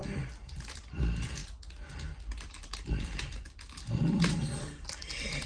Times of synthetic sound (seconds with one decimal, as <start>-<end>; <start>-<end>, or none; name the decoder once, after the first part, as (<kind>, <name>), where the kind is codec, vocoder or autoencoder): none